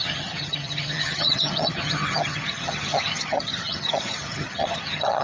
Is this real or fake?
fake